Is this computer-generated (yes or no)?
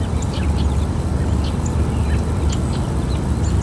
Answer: no